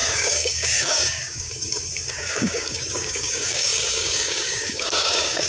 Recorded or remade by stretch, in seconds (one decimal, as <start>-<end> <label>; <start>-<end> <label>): 0.0-5.5 remade